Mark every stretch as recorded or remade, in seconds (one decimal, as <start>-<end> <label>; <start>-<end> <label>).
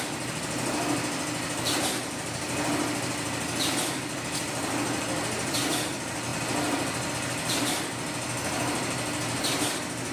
0.0-10.1 recorded